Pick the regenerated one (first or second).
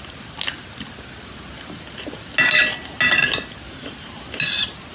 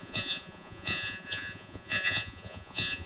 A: second